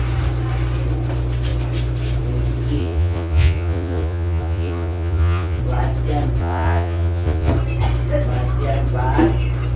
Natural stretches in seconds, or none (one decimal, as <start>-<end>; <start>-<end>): 0.0-2.8; 5.6-6.4; 7.5-9.8